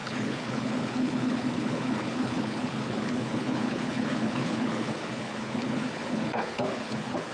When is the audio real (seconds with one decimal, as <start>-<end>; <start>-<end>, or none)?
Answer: none